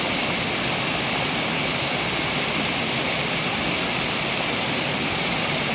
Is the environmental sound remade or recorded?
recorded